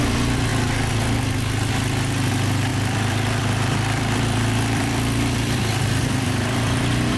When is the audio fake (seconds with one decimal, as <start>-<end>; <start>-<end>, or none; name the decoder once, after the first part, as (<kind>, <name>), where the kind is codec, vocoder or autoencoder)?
2.7-6.8 (vocoder, BigVGAN v2)